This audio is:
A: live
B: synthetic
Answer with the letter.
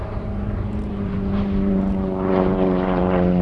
B